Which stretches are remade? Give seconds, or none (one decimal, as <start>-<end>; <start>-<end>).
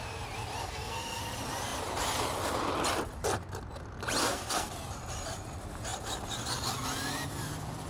0.6-1.2; 4.2-4.7